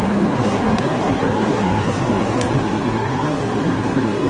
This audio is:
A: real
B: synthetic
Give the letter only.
B